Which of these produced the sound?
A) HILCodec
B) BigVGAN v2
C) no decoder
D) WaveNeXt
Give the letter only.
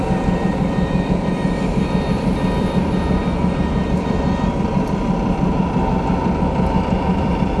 B